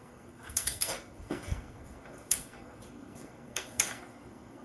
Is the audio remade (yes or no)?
yes